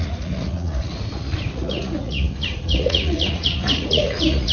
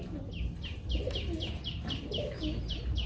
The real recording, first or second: second